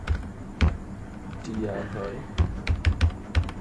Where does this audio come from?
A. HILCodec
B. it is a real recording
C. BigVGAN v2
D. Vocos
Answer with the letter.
C